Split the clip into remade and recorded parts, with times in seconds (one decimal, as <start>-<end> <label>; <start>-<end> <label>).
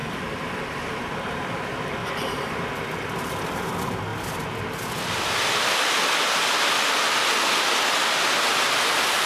0.0-0.6 remade; 0.6-2.0 recorded; 2.0-2.6 remade; 2.6-9.3 recorded